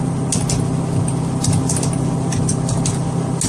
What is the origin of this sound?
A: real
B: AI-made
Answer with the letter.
A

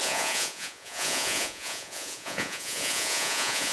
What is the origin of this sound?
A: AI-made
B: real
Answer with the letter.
A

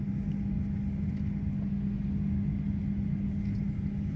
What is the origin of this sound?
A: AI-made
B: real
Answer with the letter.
B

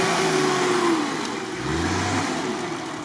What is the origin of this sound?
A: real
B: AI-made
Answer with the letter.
A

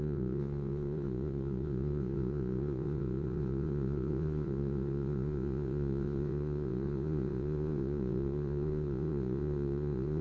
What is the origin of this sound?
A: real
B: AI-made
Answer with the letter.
B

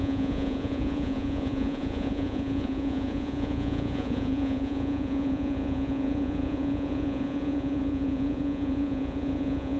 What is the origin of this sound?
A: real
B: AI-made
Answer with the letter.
B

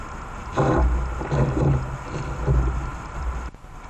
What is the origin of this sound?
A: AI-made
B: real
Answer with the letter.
B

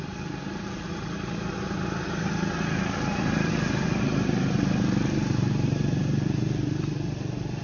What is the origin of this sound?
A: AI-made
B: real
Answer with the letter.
B